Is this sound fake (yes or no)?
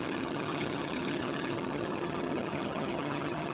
yes